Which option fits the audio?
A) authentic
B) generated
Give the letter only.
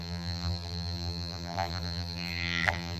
B